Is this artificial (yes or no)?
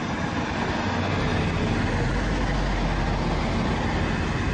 no